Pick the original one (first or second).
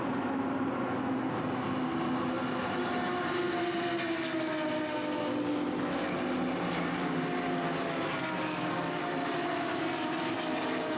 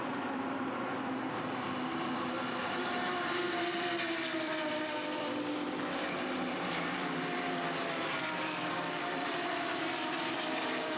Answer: first